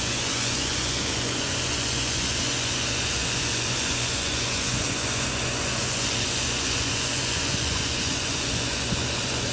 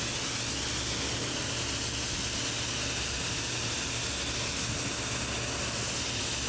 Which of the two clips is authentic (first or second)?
second